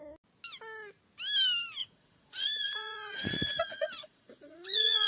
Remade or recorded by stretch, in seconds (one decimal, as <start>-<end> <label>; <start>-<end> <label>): 0.0-1.8 recorded; 1.8-5.1 remade